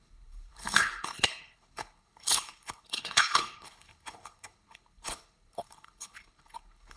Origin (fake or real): fake